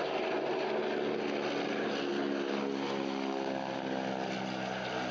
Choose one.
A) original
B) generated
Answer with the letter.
A